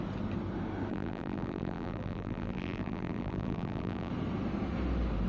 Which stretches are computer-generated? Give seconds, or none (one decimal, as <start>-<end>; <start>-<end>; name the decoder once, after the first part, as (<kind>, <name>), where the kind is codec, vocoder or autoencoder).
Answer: 0.9-4.1 (vocoder, BigVGAN v2)